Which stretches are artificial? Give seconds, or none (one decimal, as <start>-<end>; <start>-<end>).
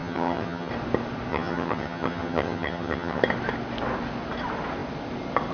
0.0-0.7; 1.3-3.2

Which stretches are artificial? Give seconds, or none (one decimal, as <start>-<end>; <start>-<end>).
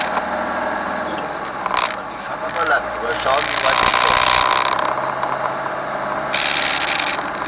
none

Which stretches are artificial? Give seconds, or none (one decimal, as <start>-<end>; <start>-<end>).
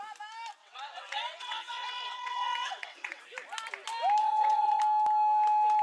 0.6-3.2; 4.2-4.8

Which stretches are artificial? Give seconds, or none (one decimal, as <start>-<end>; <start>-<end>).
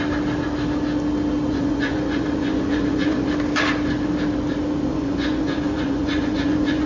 1.5-3.3; 4.9-6.9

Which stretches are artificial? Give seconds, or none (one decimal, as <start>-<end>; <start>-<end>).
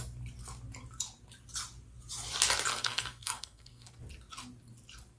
2.7-3.9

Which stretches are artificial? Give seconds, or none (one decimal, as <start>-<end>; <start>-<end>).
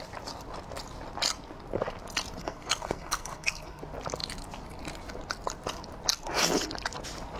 2.4-3.8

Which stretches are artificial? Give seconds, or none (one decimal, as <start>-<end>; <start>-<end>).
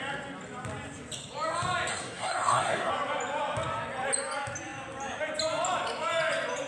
1.9-2.9